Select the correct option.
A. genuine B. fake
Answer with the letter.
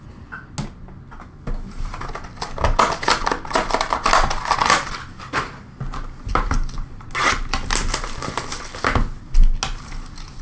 A